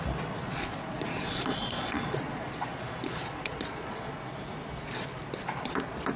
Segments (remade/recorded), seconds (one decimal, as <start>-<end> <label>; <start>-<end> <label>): 0.0-0.4 recorded; 0.4-4.1 remade; 4.1-6.2 recorded

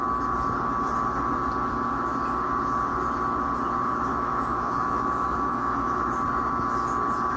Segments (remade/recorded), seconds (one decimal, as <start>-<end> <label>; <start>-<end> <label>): 0.0-4.1 recorded; 4.1-6.0 remade; 6.0-7.4 recorded

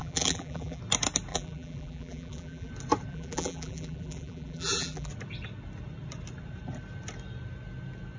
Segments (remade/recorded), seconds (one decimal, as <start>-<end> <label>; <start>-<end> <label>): 0.0-0.8 remade; 0.8-1.3 recorded; 1.3-2.7 remade; 2.7-3.1 recorded; 3.1-5.1 remade; 5.1-8.2 recorded

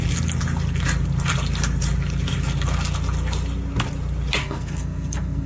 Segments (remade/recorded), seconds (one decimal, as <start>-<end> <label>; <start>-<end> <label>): 0.0-4.4 recorded; 4.4-5.5 remade

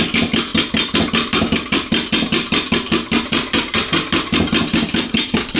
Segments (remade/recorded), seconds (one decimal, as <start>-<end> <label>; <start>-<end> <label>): 0.0-4.7 recorded; 4.7-5.6 remade